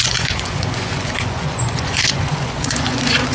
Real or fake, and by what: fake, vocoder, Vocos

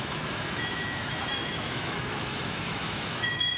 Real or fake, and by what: fake, autoencoder, DAC-VAE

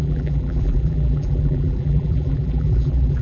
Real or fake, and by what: fake, vocoder, BigVGAN v2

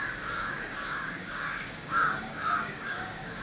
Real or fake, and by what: fake, codec, DAC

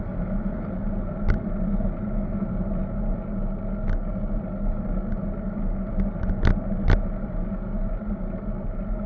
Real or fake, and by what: real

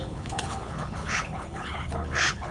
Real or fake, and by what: fake, codec, HILCodec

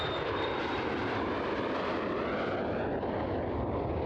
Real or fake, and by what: real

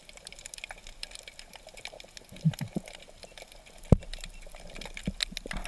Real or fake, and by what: real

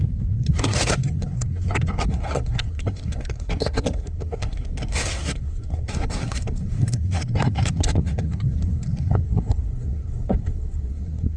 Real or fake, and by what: fake, codec, SNAC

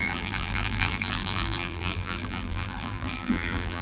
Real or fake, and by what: fake, vocoder, BigVGAN v2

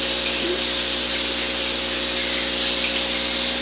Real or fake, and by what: real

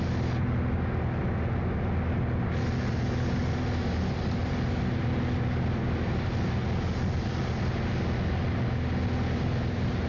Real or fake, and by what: real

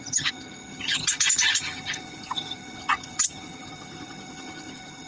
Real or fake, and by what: fake, vocoder, HiFi-GAN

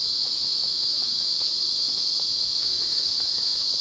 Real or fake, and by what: fake, autoencoder, DAC-VAE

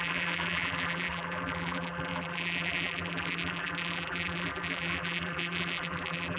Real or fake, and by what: fake, vocoder, BigVGAN v2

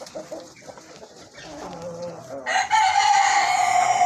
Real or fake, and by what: real